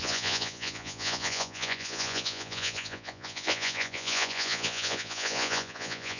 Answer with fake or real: fake